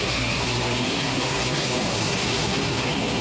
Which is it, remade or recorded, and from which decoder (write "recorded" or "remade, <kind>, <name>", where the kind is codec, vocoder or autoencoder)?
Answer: remade, codec, SNAC